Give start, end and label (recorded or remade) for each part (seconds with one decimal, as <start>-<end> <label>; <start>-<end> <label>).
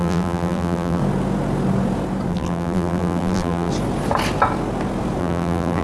0.0-1.0 remade; 1.0-2.3 recorded; 2.3-3.7 remade; 3.7-5.2 recorded; 5.2-5.8 remade